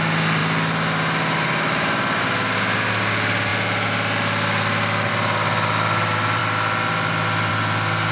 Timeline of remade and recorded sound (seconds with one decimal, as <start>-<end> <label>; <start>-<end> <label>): 0.0-8.1 recorded